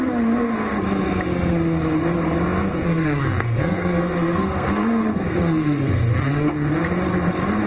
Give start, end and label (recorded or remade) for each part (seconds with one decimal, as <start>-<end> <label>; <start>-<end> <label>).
0.0-2.6 recorded; 2.6-6.5 remade; 6.5-7.7 recorded